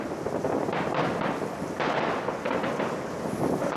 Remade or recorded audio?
recorded